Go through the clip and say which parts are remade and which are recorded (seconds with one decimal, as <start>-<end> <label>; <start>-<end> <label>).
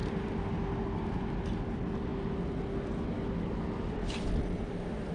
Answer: 0.0-5.1 recorded